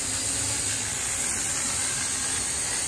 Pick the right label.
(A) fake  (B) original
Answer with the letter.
B